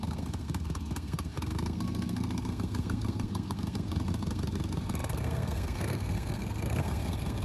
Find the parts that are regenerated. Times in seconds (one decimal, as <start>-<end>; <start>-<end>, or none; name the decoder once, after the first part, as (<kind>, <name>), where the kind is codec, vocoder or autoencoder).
0.0-7.4 (codec, SNAC)